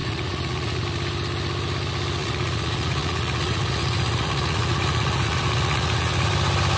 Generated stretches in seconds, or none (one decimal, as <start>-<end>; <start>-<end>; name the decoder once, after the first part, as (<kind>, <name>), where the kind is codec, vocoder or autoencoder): 0.0-0.8 (vocoder, Vocos); 2.2-6.3